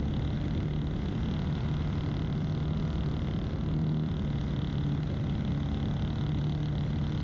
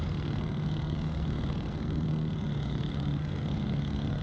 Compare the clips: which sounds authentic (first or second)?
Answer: first